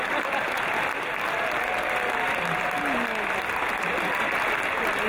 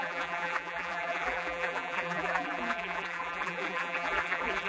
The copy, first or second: second